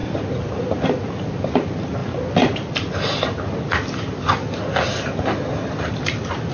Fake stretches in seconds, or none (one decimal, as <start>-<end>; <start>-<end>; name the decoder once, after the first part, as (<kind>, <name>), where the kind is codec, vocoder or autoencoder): none